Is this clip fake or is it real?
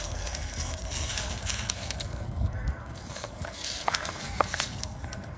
fake